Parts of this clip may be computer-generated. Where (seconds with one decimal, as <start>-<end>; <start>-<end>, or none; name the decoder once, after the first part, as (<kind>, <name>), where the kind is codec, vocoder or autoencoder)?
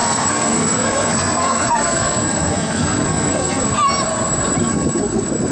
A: 0.0-3.8 (codec, SNAC); 4.6-5.5